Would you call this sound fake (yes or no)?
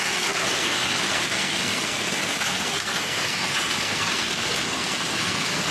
yes